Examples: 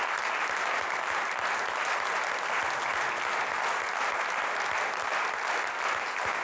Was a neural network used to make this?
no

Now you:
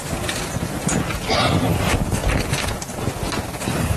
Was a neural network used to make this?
no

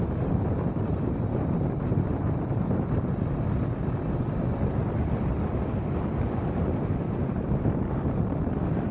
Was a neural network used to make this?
yes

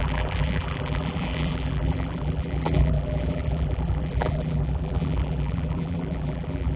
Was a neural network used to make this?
yes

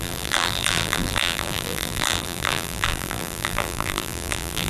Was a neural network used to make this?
yes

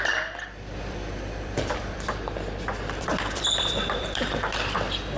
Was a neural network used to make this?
yes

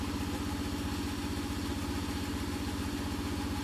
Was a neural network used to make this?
no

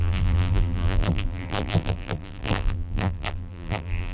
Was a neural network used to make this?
yes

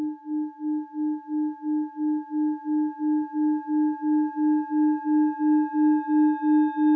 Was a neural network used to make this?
no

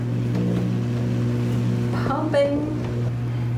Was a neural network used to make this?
no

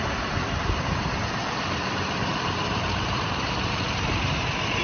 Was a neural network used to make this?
yes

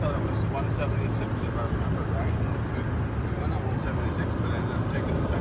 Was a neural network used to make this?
no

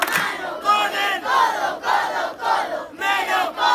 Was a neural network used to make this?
no